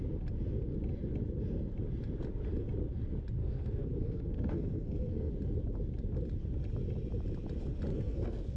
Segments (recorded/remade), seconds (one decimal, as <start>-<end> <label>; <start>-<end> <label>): 0.0-3.4 recorded; 3.4-5.3 remade; 5.3-7.9 recorded; 7.9-8.6 remade